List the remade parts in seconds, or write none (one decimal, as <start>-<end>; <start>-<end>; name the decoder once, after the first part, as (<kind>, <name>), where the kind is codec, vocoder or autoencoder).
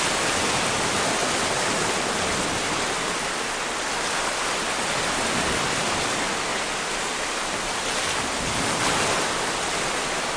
1.2-2.3 (vocoder, BigVGAN v2); 6.5-9.0